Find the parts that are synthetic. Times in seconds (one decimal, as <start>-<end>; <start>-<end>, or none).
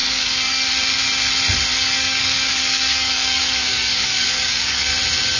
0.0-0.7; 1.7-4.9